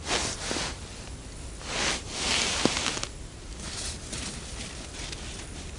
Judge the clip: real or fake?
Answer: real